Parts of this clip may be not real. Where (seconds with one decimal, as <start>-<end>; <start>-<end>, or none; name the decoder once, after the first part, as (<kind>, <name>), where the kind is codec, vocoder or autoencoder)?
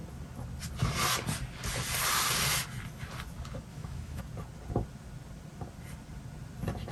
3.7-4.2 (autoencoder, DAC-VAE)